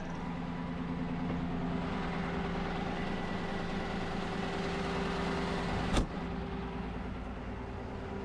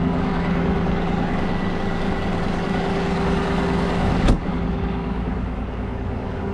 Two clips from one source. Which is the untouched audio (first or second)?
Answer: first